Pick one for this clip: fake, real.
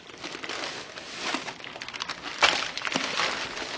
real